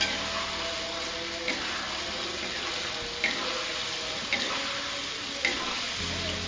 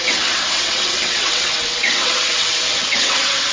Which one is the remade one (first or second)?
second